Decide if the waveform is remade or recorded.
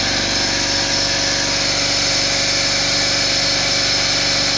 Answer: recorded